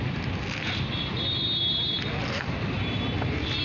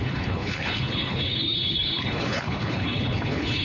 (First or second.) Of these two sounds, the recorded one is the first